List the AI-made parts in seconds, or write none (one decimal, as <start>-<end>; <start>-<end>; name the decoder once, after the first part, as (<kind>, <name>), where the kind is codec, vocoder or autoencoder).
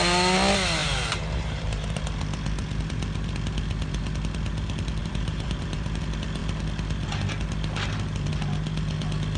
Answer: 0.8-2.0 (vocoder, BigVGAN v2); 5.0-6.0